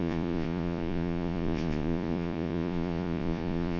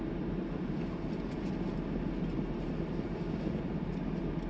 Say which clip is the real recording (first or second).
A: second